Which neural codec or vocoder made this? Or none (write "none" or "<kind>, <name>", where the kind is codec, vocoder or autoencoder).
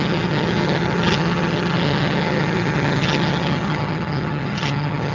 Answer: vocoder, HiFi-GAN